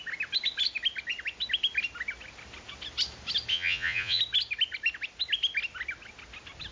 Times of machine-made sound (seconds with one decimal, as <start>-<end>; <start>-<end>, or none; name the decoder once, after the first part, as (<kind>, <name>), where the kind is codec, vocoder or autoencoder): 3.5-4.2 (vocoder, Vocos)